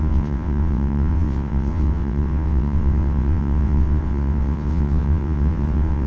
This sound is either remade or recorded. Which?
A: remade